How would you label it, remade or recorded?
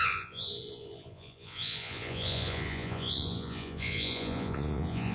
remade